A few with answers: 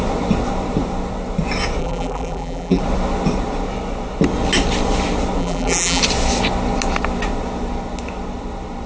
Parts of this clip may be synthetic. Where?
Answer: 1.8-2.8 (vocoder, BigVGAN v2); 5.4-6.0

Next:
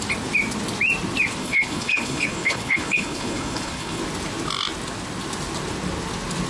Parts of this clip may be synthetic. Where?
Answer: 1.4-4.0 (codec, HILCodec)

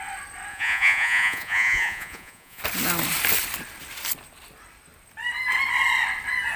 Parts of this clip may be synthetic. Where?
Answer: 0.5-2.6 (vocoder, Vocos)

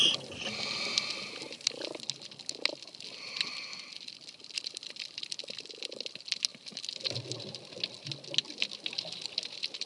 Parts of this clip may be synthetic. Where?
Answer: none